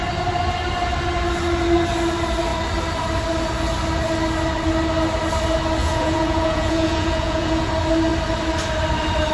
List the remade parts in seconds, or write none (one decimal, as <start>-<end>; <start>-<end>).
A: 5.8-7.7